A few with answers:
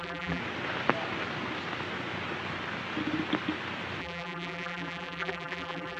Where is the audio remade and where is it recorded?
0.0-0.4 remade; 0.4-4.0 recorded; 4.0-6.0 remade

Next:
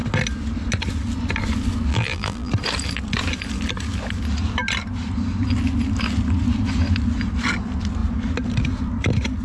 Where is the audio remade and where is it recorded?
0.0-1.9 recorded; 1.9-2.5 remade; 2.5-9.4 recorded

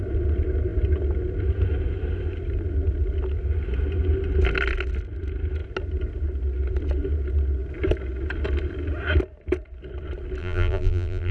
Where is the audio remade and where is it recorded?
0.0-10.4 recorded; 10.4-11.3 remade

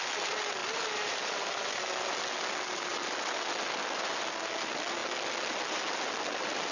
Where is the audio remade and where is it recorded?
0.0-0.6 recorded; 0.6-2.2 remade; 2.2-6.7 recorded

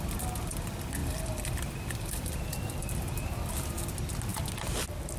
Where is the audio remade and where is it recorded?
0.0-1.0 recorded; 1.0-3.5 remade; 3.5-5.2 recorded

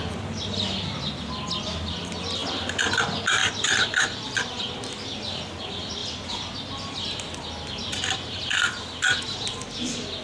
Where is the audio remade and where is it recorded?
0.0-3.4 recorded; 3.4-4.6 remade; 4.6-10.2 recorded

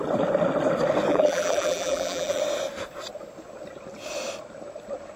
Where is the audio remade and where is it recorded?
0.0-1.1 recorded; 1.1-2.4 remade; 2.4-5.2 recorded